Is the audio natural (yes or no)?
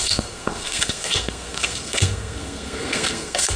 no